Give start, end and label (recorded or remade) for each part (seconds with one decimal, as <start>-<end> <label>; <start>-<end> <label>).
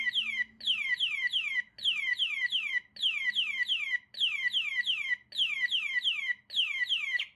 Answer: 0.0-7.3 recorded